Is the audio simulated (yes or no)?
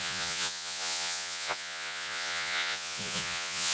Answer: yes